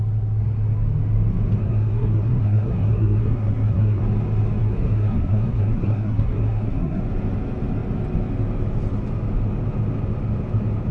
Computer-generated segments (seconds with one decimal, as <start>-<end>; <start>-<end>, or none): 1.6-4.0; 4.6-7.0